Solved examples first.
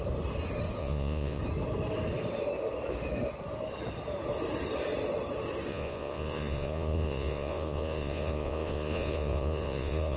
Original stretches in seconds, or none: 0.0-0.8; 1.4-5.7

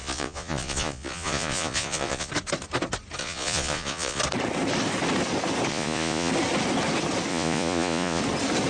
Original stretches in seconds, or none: 2.3-3.2; 4.2-5.7; 6.3-7.3; 8.2-8.7

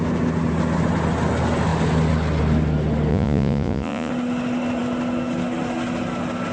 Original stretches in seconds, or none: 0.0-3.1; 4.1-6.5